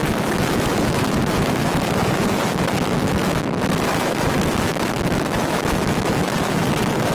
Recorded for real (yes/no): no